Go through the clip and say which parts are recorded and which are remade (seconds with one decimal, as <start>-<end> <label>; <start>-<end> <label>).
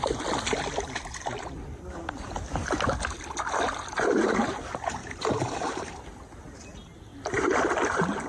0.0-5.0 recorded; 5.0-5.9 remade; 5.9-8.3 recorded